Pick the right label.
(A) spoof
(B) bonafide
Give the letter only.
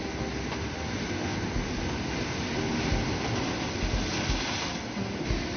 B